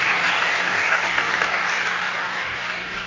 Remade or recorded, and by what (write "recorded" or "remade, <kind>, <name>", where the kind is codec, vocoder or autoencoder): remade, codec, DAC